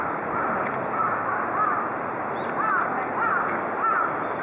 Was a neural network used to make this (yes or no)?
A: no